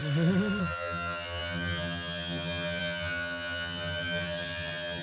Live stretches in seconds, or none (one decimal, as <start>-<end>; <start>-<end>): 0.0-0.6